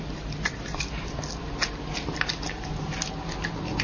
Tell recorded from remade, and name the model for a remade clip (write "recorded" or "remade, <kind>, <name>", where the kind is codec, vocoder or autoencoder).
recorded